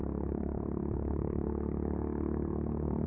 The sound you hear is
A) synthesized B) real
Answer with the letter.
A